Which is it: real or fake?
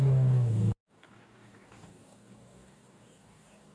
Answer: fake